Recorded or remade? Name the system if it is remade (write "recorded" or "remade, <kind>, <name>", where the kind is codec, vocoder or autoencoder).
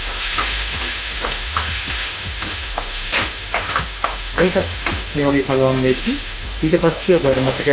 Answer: remade, autoencoder, DAC-VAE